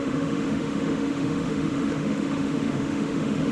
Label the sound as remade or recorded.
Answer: remade